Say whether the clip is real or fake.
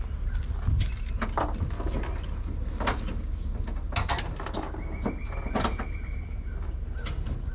real